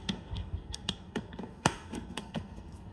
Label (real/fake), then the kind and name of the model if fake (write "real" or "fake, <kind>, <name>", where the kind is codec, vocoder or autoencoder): fake, codec, SNAC